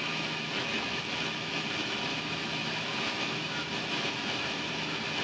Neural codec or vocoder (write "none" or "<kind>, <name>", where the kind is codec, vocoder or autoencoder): autoencoder, DAC-VAE